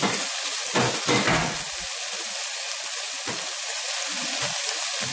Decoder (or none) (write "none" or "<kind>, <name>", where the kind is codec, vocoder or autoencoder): none